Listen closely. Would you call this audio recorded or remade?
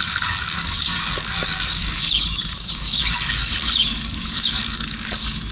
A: remade